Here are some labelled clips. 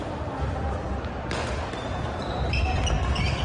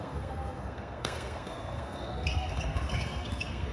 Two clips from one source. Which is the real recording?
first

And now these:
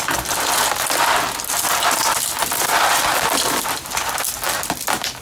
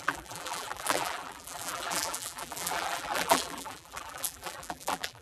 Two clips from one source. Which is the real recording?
first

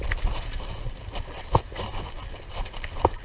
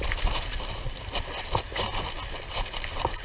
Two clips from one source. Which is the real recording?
first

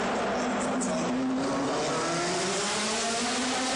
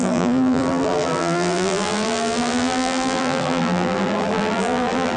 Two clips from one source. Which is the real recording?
first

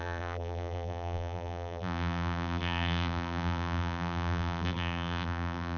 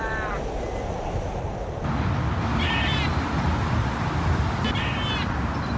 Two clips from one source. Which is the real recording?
second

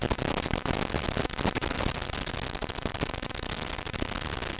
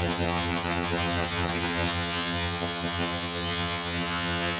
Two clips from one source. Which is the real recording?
first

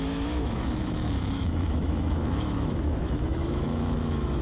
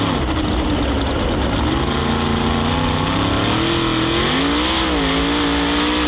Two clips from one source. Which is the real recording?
second